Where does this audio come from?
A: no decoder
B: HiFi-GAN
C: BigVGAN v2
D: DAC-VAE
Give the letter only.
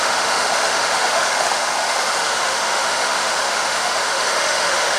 D